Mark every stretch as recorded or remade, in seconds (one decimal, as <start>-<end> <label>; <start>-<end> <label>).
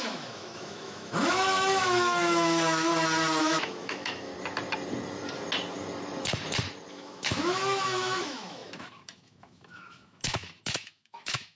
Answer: 0.0-2.9 remade; 2.9-3.4 recorded; 3.4-4.3 remade; 4.3-6.9 recorded; 6.9-11.6 remade